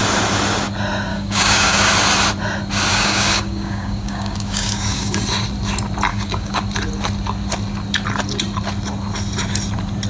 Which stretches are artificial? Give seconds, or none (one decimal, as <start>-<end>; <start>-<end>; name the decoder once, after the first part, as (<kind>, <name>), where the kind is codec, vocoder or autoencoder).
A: 1.1-1.9 (codec, DAC); 2.9-5.2; 6.1-6.6